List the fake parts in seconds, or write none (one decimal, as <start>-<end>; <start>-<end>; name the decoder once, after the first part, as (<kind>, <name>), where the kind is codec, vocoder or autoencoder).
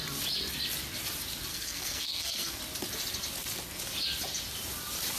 1.5-2.6 (codec, SNAC)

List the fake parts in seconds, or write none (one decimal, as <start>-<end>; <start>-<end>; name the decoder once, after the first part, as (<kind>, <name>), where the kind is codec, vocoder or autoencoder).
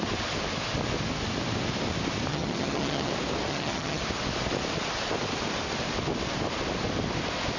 2.3-3.1 (vocoder, HiFi-GAN); 3.5-4.0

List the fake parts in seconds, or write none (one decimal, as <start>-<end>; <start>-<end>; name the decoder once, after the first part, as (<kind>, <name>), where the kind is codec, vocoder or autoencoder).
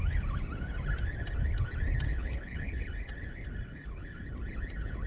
2.1-2.8 (codec, HILCodec)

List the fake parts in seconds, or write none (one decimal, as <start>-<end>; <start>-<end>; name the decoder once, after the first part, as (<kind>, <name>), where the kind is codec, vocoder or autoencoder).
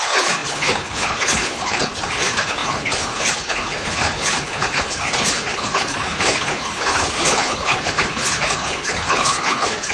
0.0-9.9 (codec, HILCodec)